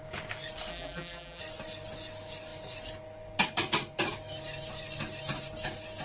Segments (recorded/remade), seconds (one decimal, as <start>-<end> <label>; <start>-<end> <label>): 0.0-0.7 recorded; 0.7-1.4 remade; 1.4-6.0 recorded